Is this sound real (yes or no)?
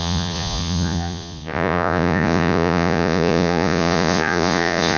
no